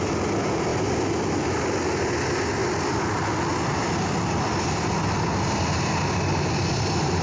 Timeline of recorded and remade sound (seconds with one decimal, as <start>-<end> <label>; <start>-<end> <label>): 0.0-7.2 recorded